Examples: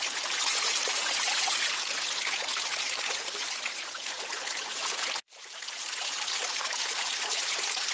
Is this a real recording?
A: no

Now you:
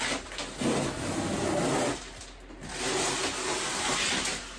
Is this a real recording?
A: yes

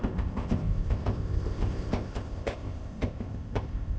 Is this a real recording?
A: no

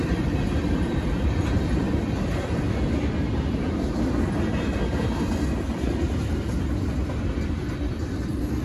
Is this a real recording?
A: yes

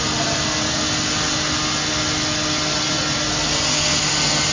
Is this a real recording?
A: yes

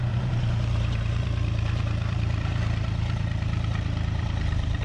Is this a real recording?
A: no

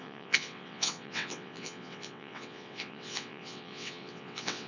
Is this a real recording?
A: no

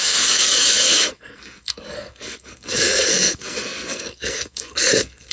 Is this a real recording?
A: no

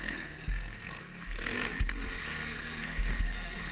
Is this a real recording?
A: no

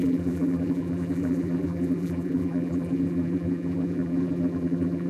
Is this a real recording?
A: no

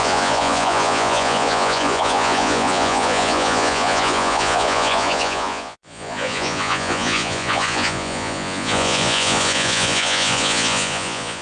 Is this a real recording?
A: no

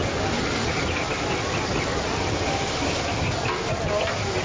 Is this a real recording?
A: yes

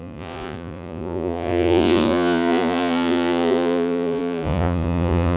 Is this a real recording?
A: no